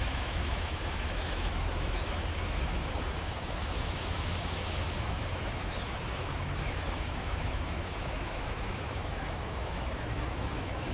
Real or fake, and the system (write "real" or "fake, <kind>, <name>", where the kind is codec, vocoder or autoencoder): fake, autoencoder, DAC-VAE